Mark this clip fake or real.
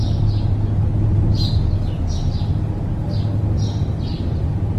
real